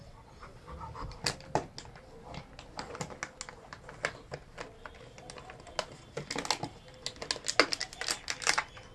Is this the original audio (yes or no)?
yes